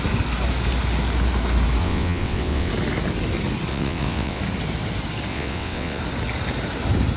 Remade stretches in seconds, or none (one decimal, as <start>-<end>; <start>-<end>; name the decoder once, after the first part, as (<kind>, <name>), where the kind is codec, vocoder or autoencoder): 1.8-2.7 (vocoder, WaveNeXt); 3.7-4.4; 5.3-6.0